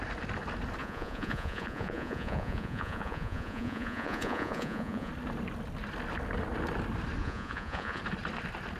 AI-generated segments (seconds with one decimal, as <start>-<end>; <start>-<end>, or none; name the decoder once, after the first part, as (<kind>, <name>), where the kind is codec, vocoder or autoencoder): 0.8-5.1 (vocoder, Vocos); 7.2-8.0